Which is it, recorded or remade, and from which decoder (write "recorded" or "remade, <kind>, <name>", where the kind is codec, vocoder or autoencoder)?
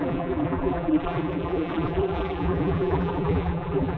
remade, vocoder, BigVGAN v2